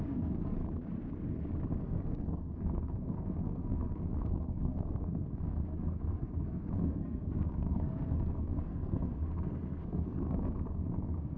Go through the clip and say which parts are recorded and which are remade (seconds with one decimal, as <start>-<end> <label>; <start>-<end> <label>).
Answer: 0.0-0.6 remade; 0.6-1.8 recorded; 1.8-11.4 remade